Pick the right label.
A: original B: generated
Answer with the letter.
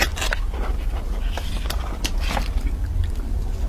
A